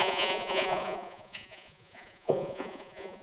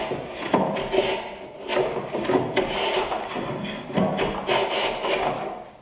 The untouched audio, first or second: second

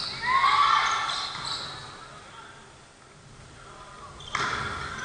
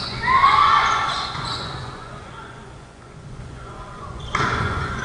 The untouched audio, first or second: first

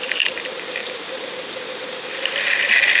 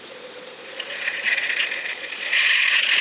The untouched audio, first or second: first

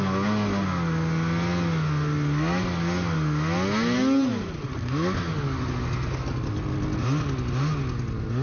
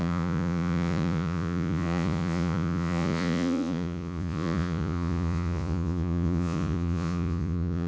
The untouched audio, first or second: first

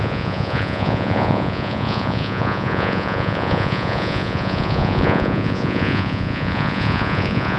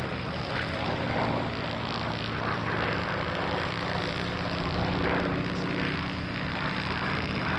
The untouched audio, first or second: second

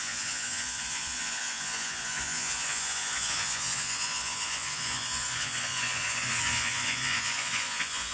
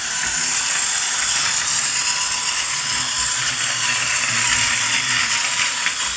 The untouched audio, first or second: second